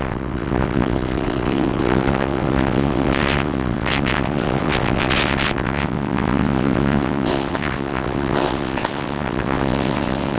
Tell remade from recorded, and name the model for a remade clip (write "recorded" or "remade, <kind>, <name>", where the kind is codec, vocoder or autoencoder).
remade, vocoder, WaveNeXt